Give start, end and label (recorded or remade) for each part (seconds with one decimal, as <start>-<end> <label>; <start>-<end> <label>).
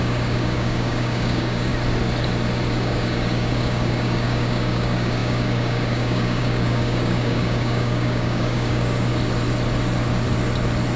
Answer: 0.0-1.7 remade; 1.7-2.7 recorded; 2.7-9.1 remade; 9.1-11.0 recorded